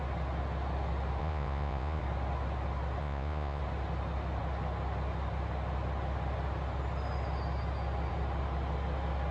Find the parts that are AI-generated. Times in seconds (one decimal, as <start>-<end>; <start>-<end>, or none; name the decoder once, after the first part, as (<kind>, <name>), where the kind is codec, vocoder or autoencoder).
1.2-2.0 (vocoder, Vocos); 3.0-3.6